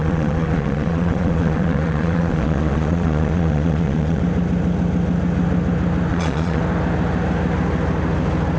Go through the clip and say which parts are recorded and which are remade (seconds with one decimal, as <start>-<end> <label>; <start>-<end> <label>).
0.0-4.2 remade; 4.2-6.1 recorded; 6.1-6.6 remade; 6.6-8.6 recorded